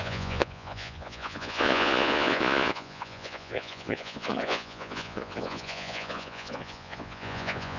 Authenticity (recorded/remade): remade